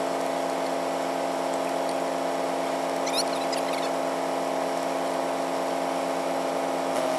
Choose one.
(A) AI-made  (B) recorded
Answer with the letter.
B